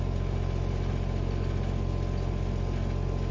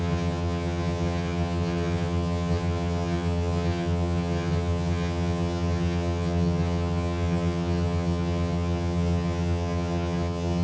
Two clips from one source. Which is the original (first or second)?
first